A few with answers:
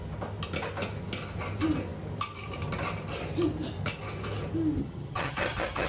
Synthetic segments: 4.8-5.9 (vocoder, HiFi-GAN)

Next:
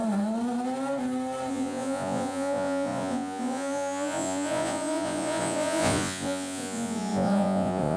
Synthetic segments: 1.5-8.0 (vocoder, Vocos)

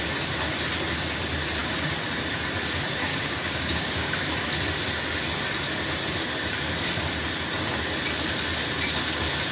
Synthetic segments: 3.1-4.3 (codec, DAC)

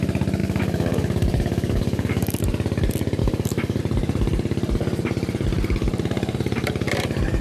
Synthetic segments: 0.4-2.4 (codec, DAC); 3.2-3.8